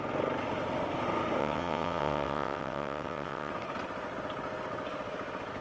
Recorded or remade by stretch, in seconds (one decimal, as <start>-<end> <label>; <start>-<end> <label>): 0.0-1.4 recorded; 1.4-3.5 remade; 3.5-5.6 recorded